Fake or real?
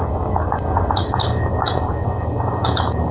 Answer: fake